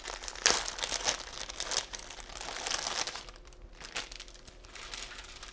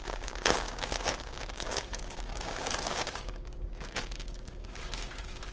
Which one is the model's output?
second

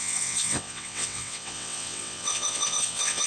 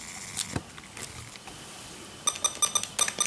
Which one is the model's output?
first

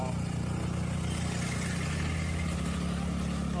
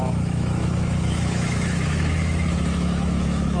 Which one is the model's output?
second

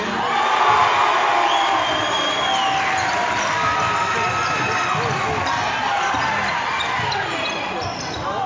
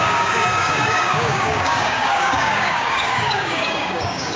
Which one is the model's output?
second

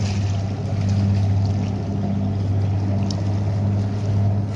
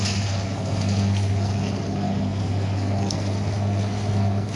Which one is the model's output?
second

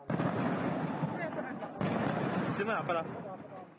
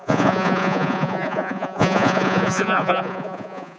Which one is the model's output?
second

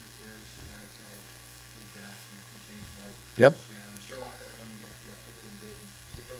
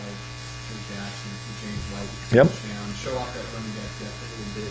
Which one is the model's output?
first